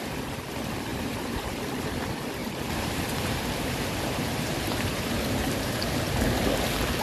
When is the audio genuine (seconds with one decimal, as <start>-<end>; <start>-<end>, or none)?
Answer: 0.0-0.9; 1.6-2.4; 5.8-7.0

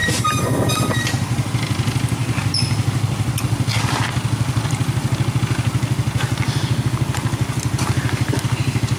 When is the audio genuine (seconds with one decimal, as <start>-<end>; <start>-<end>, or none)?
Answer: 0.0-9.0